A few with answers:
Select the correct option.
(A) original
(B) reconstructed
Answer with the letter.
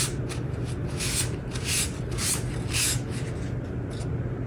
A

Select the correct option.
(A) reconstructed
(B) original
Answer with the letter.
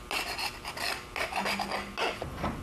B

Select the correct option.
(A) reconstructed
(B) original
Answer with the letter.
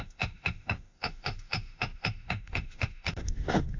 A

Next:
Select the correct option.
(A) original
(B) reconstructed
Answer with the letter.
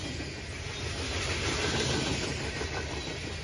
A